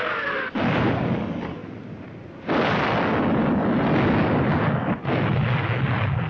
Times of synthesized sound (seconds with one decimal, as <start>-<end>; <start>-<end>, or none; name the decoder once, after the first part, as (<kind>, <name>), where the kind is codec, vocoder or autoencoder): none